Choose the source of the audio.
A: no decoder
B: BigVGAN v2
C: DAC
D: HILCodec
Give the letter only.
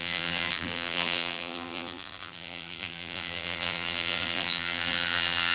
B